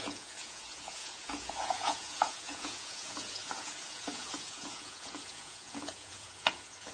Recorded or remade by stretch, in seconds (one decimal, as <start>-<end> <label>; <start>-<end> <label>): 0.0-6.9 remade